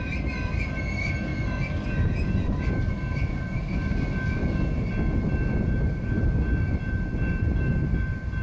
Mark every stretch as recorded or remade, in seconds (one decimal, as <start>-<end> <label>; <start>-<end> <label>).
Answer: 0.0-1.3 remade; 1.3-2.3 recorded; 2.3-4.4 remade; 4.4-5.7 recorded; 5.7-8.4 remade